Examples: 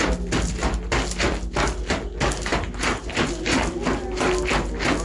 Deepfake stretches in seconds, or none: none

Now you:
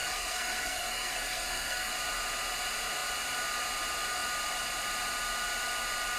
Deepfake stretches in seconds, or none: 0.0-1.9

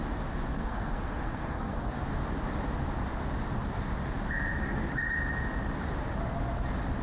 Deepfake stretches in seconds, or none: 0.5-1.9